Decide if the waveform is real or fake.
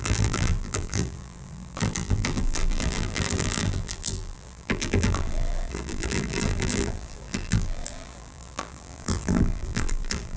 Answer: fake